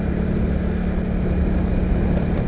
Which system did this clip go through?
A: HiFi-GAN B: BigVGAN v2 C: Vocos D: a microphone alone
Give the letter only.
D